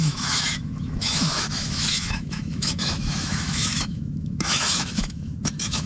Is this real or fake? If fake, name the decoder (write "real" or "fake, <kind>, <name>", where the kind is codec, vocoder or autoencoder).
fake, autoencoder, DAC-VAE